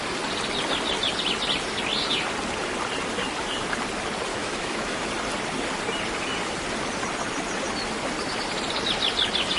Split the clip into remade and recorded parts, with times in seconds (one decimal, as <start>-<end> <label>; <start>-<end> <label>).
0.0-4.3 recorded; 4.3-5.1 remade; 5.1-9.6 recorded

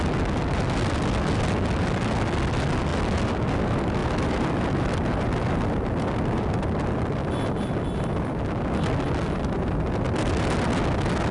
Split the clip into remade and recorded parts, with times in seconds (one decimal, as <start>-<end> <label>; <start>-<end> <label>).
0.0-11.3 recorded

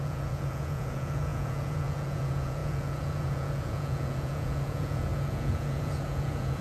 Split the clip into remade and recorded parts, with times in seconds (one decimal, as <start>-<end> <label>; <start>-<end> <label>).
0.0-6.6 remade

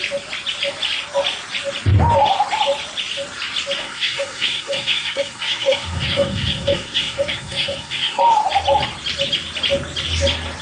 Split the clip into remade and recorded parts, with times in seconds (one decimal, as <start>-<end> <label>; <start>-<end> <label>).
0.0-3.8 recorded; 3.8-8.2 remade; 8.2-10.6 recorded

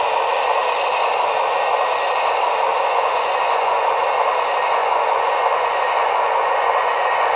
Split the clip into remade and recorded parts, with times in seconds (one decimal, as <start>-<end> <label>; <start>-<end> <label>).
0.0-2.7 recorded; 2.7-3.9 remade; 3.9-4.8 recorded; 4.8-7.4 remade

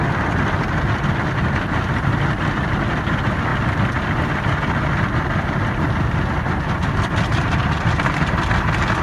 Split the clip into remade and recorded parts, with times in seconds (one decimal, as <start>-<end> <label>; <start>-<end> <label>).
0.0-9.0 recorded

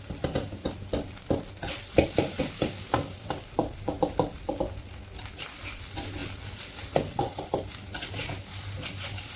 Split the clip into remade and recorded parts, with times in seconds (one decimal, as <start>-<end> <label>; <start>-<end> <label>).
0.0-9.4 recorded

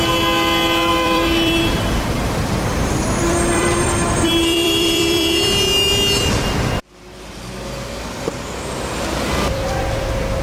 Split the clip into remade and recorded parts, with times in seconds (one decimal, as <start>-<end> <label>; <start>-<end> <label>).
0.0-0.9 recorded; 0.9-5.6 remade; 5.6-10.4 recorded